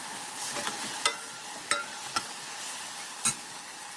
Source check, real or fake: real